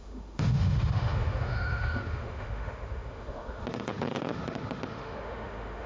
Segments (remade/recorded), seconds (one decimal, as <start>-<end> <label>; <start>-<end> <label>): 0.0-5.9 remade